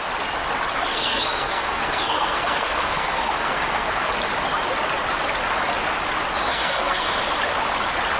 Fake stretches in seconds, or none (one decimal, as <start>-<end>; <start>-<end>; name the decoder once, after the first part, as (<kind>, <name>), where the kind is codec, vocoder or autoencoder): 0.9-4.1 (codec, SNAC); 6.5-7.1